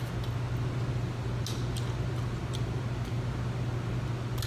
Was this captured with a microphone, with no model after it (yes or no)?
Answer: yes